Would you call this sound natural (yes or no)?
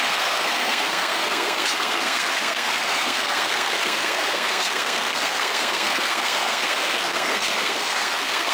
no